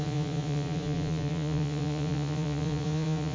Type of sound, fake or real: fake